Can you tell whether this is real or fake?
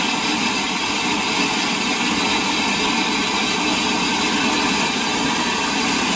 real